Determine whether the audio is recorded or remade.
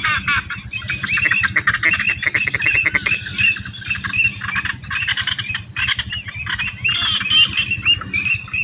recorded